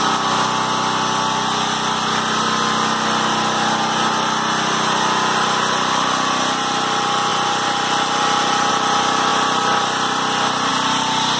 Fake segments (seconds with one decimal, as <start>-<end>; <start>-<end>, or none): 7.3-8.7; 9.3-10.7